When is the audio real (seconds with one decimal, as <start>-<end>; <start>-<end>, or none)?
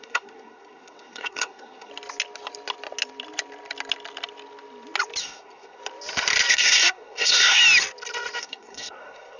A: 1.9-5.2; 5.8-6.5; 7.6-8.4